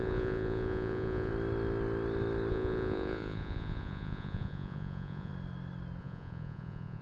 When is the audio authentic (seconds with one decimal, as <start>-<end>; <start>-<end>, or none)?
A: 1.3-2.5; 5.3-6.0